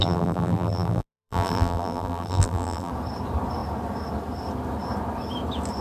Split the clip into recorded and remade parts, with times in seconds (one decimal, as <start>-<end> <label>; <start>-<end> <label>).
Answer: 0.0-2.9 remade; 2.9-5.8 recorded